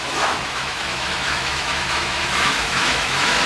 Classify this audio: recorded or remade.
remade